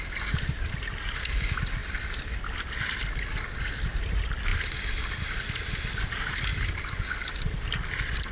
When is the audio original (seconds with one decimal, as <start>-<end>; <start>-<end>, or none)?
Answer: 0.0-8.3